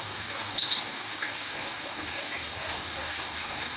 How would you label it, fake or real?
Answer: fake